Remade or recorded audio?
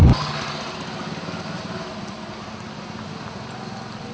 recorded